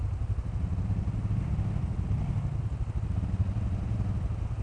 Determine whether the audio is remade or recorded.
recorded